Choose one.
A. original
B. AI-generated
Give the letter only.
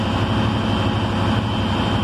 A